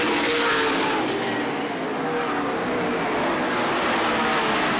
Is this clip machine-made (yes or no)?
no